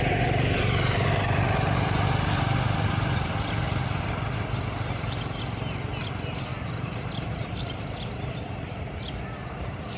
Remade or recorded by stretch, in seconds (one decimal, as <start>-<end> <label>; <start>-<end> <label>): 0.0-6.5 recorded; 6.5-9.1 remade; 9.1-10.0 recorded